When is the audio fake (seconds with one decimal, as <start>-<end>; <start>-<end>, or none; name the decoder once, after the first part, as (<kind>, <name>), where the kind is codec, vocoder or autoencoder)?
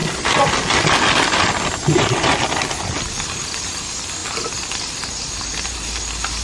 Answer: none